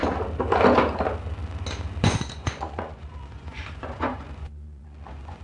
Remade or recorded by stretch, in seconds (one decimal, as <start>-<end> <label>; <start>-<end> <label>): 0.0-2.0 recorded; 2.0-5.4 remade

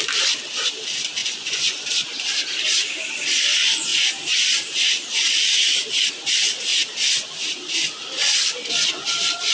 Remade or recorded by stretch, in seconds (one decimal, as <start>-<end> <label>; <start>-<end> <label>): 0.0-1.2 recorded; 1.2-1.9 remade; 1.9-9.5 recorded

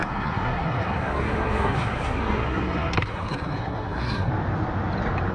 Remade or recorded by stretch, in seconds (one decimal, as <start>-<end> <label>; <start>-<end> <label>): 0.0-4.3 remade; 4.3-5.3 recorded

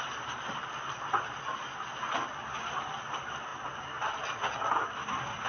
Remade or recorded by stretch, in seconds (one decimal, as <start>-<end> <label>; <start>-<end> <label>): 0.0-5.5 recorded

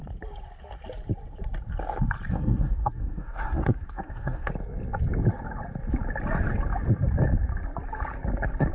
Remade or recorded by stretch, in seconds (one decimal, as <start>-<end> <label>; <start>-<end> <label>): 0.0-2.3 recorded; 2.3-4.5 remade; 4.5-8.7 recorded

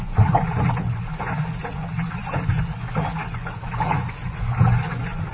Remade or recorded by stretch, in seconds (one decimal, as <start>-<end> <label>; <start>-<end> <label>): 0.0-5.3 remade

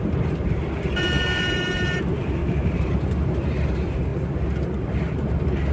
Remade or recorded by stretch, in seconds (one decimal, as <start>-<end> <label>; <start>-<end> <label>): 0.0-4.1 remade; 4.1-4.8 recorded; 4.8-5.7 remade

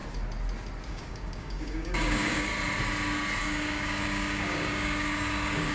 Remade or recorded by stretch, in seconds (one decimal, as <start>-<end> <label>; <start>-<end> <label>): 0.0-0.9 recorded; 0.9-2.5 remade; 2.5-3.4 recorded; 3.4-5.7 remade